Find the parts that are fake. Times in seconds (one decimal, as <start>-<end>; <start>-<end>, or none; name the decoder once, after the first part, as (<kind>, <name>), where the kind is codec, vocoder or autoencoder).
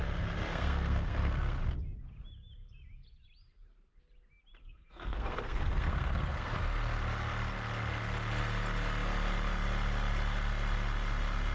0.5-1.6 (codec, SNAC); 4.6-6.6